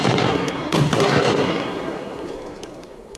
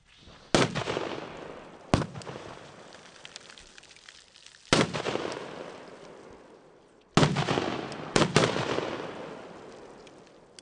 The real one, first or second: second